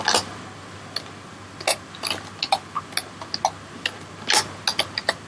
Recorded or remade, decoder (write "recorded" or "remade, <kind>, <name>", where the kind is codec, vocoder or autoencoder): recorded